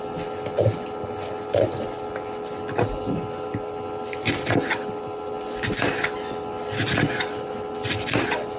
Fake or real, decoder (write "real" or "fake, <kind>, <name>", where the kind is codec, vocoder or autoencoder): real